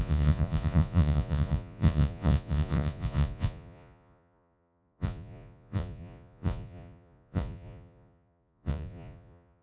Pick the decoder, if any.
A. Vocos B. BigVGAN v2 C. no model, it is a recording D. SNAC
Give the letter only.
A